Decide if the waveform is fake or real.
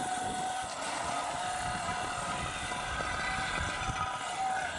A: real